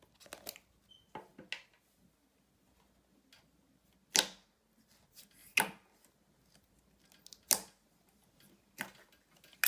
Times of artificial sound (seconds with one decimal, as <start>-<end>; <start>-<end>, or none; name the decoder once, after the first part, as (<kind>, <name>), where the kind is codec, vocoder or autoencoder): none